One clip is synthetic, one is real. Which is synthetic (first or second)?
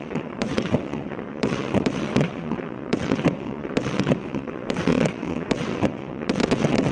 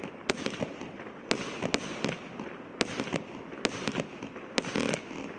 first